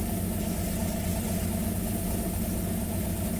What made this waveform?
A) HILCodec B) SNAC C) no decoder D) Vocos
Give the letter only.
C